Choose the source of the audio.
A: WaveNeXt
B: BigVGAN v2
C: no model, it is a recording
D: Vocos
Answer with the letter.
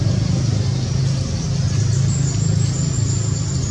C